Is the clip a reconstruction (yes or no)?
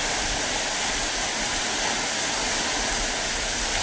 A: no